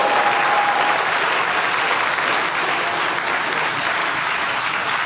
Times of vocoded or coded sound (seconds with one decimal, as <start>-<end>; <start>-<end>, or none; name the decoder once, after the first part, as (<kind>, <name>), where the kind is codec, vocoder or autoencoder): 4.0-4.6 (autoencoder, DAC-VAE)